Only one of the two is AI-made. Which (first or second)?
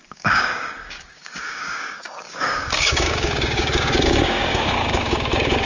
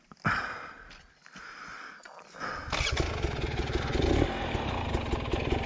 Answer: first